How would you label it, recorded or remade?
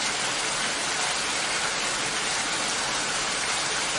recorded